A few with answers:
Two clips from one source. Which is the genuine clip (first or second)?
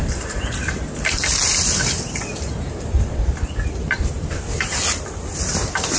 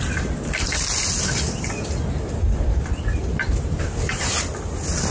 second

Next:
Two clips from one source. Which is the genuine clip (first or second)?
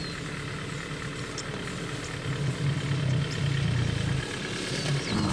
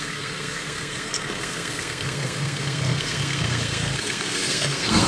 first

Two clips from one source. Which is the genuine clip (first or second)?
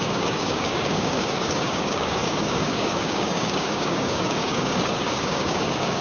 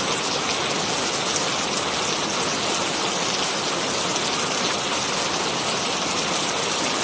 second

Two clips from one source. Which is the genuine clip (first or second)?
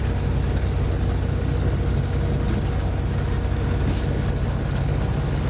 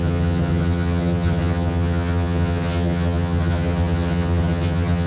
first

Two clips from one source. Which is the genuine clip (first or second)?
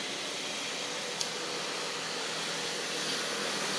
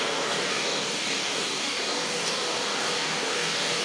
first